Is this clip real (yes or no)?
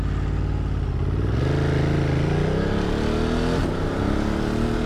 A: yes